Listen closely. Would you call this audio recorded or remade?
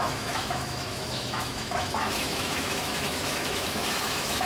remade